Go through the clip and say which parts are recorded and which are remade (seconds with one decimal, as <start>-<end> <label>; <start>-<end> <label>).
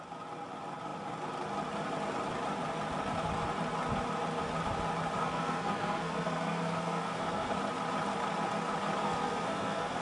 0.0-5.2 recorded; 5.2-7.6 remade; 7.6-9.0 recorded; 9.0-10.0 remade